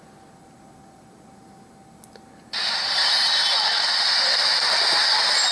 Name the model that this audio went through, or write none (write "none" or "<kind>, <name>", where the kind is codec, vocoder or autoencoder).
none